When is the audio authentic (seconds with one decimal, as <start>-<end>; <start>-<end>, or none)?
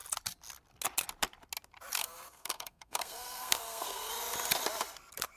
0.0-2.0; 4.1-5.4